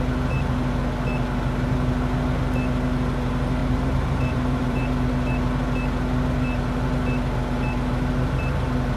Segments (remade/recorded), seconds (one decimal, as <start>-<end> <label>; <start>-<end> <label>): 0.0-3.6 recorded; 3.6-4.9 remade; 4.9-9.0 recorded